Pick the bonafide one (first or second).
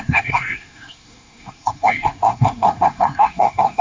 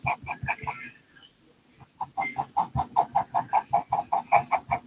second